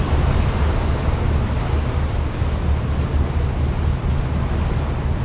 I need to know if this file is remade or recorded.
recorded